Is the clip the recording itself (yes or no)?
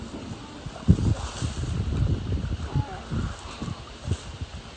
yes